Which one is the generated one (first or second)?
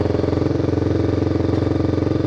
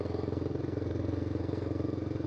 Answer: second